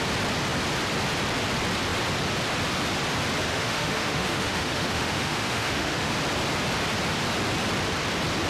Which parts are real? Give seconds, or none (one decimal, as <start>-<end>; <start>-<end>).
0.0-3.5; 6.1-8.5